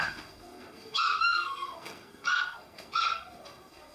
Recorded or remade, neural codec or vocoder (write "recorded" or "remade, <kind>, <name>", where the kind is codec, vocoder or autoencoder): remade, codec, SNAC